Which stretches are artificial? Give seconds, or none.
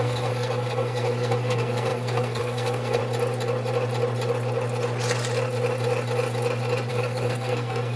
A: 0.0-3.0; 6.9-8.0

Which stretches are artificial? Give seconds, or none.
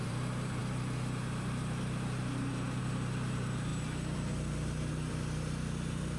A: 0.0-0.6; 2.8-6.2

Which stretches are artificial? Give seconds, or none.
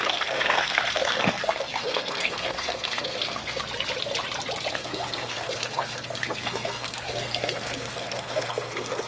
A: 0.0-3.6; 4.7-9.1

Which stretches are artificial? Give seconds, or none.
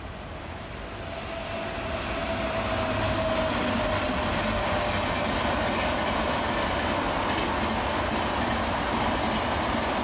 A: none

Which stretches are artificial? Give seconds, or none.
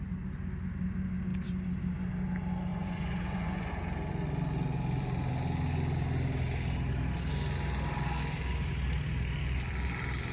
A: 2.7-3.7